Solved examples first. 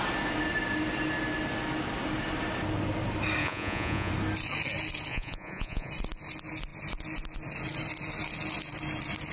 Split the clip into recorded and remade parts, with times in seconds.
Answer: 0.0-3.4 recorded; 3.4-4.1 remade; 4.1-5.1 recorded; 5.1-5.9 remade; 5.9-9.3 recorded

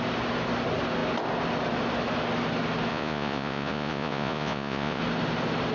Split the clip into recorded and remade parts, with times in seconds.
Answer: 0.0-2.9 recorded; 2.9-5.0 remade; 5.0-5.7 recorded

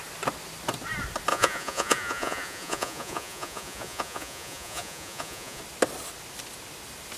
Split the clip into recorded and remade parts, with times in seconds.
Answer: 0.0-1.3 recorded; 1.3-5.6 remade; 5.6-7.2 recorded